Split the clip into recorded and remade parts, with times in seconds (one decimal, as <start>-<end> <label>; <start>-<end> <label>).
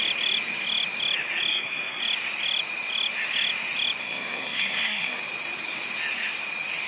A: 0.0-1.5 recorded; 1.5-2.0 remade; 2.0-4.0 recorded; 4.0-5.2 remade; 5.2-6.9 recorded